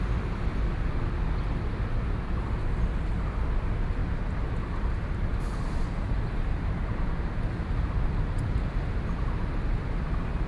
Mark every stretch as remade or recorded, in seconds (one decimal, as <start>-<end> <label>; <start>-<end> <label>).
0.0-10.5 recorded